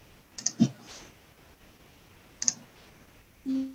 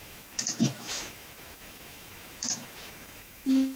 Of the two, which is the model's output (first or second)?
second